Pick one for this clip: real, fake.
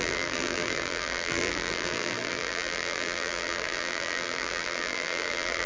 fake